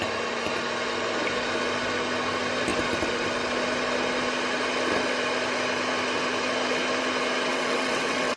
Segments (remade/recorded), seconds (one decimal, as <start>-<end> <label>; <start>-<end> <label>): 0.0-7.5 recorded; 7.5-8.4 remade